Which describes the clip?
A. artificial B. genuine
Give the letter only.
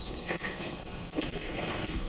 A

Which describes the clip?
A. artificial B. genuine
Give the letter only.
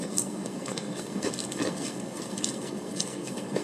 A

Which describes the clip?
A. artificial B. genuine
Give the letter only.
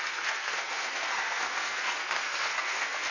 A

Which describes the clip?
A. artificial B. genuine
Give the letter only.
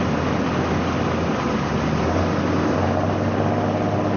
B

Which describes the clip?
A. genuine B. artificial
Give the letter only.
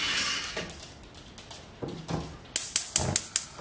A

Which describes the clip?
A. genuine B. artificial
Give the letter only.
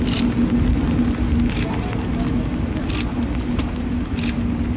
A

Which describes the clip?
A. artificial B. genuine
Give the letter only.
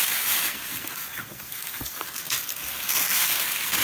A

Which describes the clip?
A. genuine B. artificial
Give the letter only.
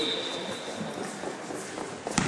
A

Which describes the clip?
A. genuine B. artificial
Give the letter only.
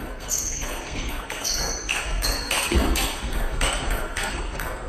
B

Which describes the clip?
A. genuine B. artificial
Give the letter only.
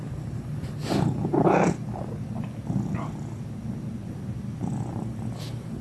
A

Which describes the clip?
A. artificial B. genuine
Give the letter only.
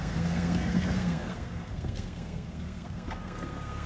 A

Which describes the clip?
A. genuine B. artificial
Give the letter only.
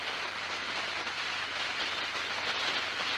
A